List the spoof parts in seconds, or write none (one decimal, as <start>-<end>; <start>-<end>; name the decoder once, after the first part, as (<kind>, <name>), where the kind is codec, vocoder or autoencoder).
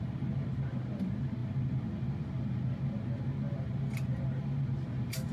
none